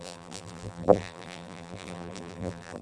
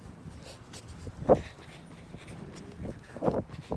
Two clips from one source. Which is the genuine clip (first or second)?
second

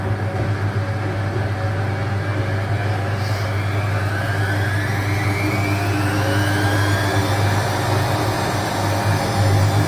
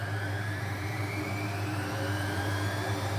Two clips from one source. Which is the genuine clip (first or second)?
first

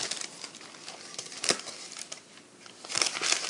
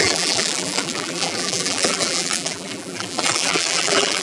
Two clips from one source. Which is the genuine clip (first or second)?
first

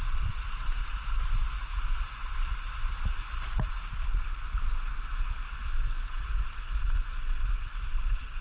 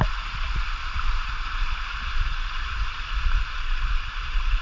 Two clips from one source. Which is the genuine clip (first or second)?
first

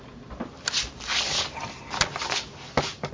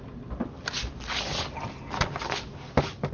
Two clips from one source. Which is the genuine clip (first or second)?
second